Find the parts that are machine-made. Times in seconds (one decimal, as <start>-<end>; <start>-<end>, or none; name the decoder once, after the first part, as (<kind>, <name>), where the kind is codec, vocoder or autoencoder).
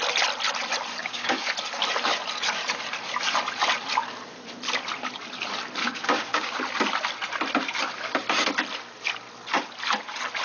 1.0-1.5 (codec, DAC); 5.8-6.6